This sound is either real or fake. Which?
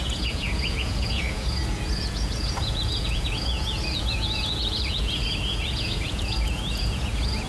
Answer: fake